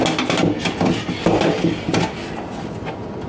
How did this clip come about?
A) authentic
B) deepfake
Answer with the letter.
A